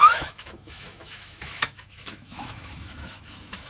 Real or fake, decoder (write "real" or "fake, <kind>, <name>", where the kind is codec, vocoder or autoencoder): fake, autoencoder, DAC-VAE